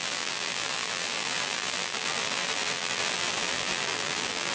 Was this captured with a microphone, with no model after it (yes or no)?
no